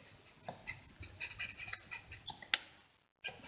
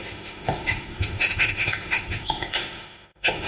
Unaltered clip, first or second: first